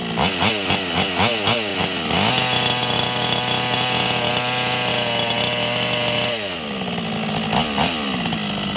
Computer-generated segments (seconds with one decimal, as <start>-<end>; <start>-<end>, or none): none